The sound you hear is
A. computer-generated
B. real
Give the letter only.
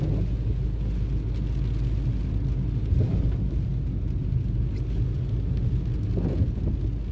B